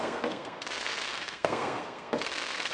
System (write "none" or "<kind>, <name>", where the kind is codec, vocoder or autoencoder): codec, SNAC